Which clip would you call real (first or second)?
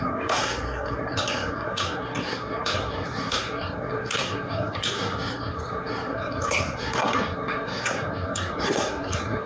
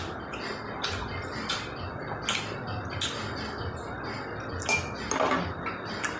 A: second